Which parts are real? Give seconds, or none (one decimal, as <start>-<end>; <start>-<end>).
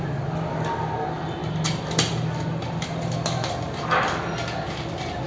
0.0-5.3